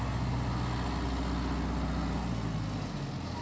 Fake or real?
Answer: real